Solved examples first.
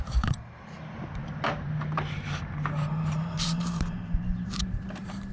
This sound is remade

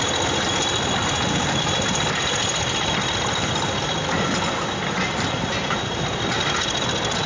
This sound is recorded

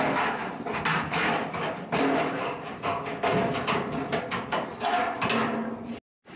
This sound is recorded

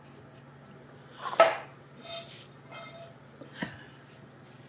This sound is recorded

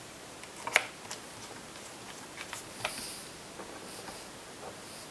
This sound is recorded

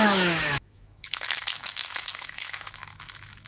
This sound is remade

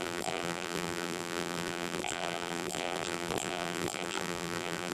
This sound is remade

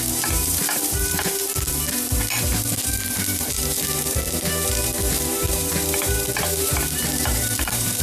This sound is remade